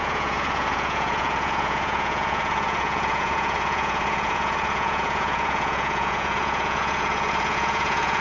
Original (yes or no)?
no